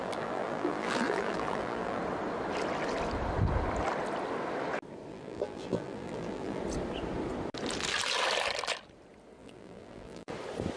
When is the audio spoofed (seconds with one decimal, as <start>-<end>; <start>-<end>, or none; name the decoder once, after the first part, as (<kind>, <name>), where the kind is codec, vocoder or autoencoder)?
0.0-2.0 (vocoder, BigVGAN v2); 5.1-6.6; 9.4-10.3